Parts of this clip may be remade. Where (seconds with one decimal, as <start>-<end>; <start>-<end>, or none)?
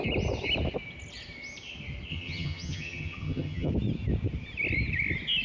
2.1-3.7